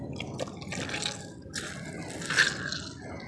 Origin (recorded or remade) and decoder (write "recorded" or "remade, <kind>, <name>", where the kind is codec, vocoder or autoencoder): recorded